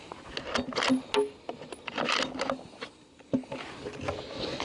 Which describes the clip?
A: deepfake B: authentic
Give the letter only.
B